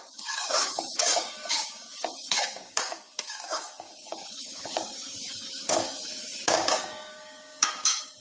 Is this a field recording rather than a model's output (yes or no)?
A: no